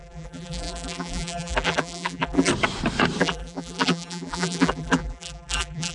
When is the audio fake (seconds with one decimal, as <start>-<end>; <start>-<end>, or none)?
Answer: 0.0-2.5; 3.2-5.9